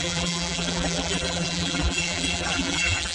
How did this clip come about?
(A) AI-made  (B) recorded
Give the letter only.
A